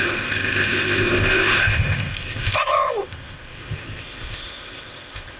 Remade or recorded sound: remade